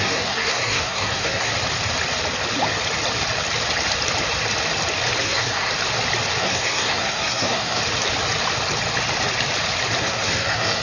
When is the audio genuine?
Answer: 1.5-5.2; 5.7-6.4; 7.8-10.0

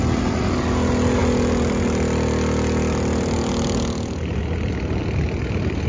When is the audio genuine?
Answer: 0.0-5.9

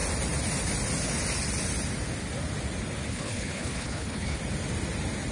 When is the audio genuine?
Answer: 0.0-3.1; 4.4-5.3

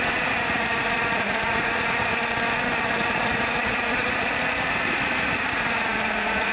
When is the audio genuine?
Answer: 2.1-2.8

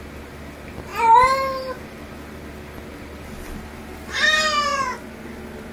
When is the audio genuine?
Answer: 0.0-0.9; 2.1-2.9; 3.8-5.7